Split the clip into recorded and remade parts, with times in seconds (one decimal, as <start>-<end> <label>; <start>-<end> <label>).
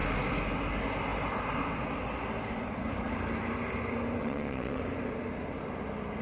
0.0-4.2 recorded; 4.2-4.8 remade; 4.8-6.2 recorded